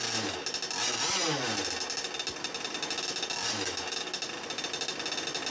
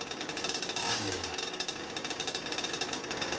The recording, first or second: first